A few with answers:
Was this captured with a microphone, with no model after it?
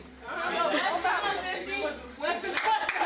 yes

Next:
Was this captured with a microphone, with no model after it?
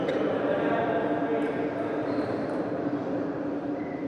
no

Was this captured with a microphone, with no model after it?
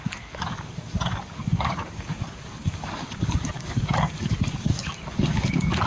no